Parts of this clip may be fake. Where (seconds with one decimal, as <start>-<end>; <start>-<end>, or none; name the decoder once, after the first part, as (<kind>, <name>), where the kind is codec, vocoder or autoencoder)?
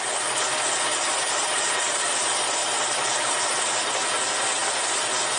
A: 0.9-1.7 (vocoder, BigVGAN v2); 2.6-3.5